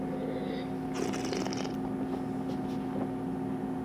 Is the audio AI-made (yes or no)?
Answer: no